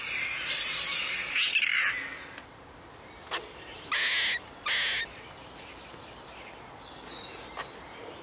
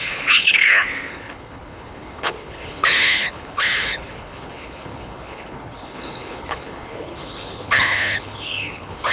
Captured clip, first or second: first